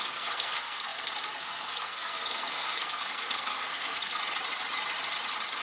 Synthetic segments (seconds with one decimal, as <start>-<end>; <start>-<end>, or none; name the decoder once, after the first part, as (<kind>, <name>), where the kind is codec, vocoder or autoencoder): 0.0-4.1 (codec, SNAC)